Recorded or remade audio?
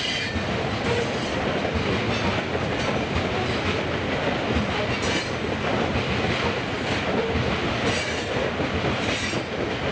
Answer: recorded